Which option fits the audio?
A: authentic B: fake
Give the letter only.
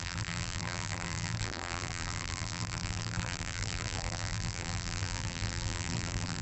B